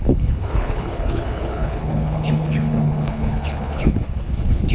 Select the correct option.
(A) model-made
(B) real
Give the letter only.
A